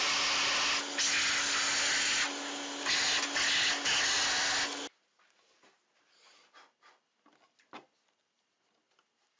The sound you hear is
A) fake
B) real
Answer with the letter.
B